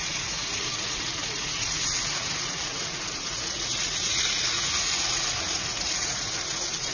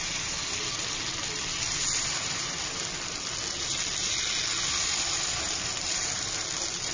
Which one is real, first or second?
second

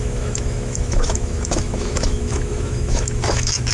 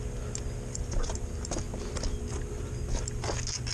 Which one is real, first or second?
second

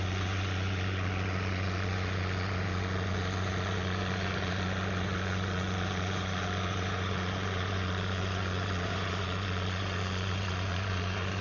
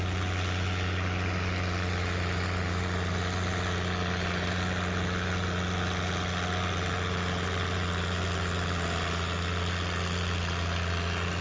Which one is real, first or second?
second